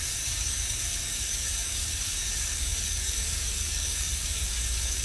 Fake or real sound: fake